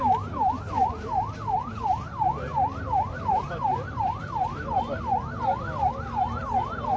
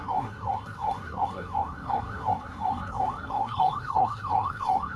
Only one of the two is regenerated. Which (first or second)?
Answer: second